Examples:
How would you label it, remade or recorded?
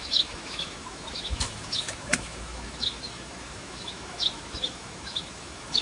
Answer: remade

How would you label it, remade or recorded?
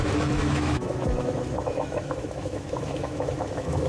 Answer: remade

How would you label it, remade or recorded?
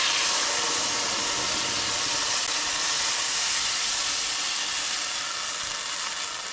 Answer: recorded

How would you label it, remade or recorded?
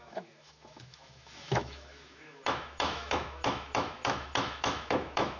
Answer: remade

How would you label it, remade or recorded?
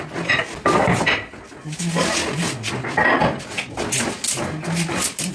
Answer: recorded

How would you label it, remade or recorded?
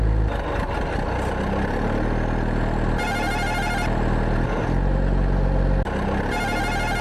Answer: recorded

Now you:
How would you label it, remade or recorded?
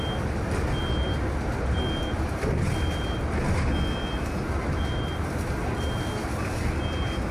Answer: recorded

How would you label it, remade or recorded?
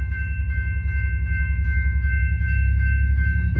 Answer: remade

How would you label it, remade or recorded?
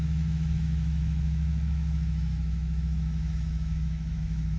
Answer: remade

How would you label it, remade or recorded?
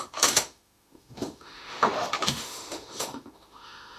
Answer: remade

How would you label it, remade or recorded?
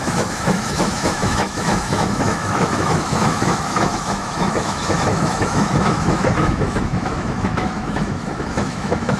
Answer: remade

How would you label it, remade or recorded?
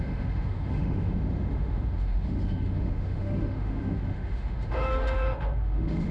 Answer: remade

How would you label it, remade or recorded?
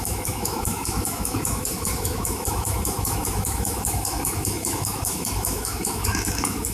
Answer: remade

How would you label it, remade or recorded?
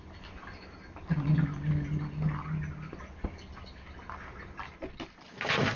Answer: recorded